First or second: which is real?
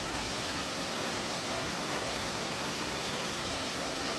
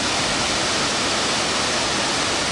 second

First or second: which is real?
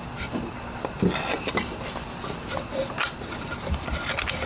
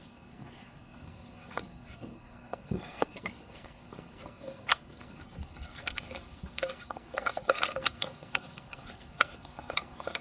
first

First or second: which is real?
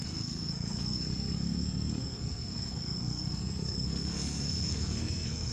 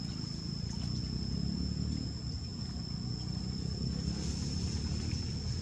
second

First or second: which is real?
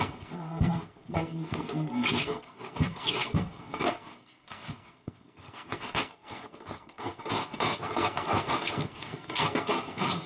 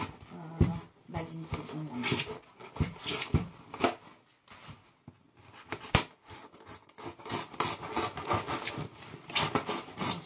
second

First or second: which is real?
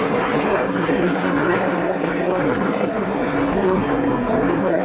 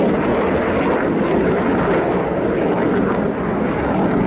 second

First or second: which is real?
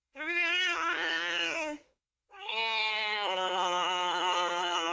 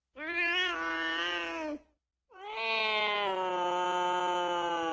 second